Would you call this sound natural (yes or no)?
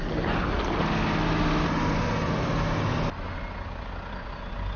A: yes